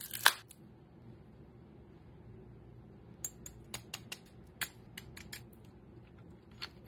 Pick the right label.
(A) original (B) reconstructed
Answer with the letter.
A